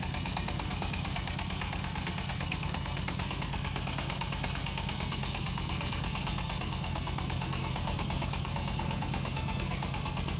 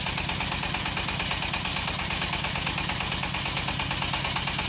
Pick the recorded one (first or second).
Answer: second